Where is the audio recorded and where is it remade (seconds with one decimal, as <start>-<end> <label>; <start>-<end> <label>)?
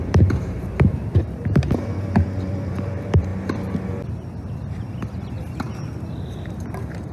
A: 0.0-3.3 remade; 3.3-6.0 recorded; 6.0-7.1 remade